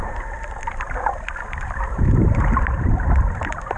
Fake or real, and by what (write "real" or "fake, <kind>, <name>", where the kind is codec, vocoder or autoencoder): real